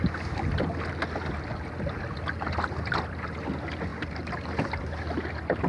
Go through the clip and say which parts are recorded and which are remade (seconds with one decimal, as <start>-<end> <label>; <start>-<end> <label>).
0.0-3.9 recorded; 3.9-4.4 remade; 4.4-5.7 recorded